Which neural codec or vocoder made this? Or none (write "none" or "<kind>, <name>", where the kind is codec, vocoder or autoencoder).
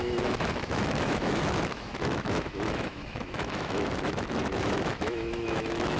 autoencoder, DAC-VAE